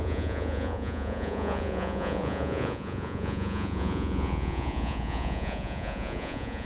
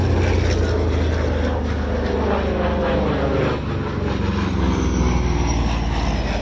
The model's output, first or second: first